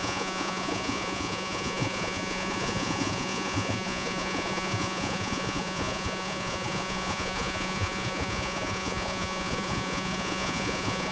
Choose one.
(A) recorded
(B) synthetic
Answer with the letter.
B